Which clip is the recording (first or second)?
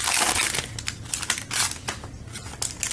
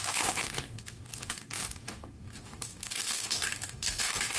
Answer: first